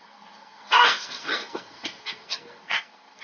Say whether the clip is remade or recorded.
remade